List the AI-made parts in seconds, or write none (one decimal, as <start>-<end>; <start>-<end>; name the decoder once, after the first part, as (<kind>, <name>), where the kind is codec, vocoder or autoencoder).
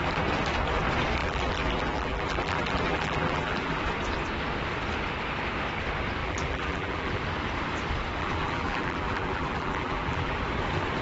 1.2-3.8 (vocoder, BigVGAN v2); 6.2-7.2; 8.2-10.4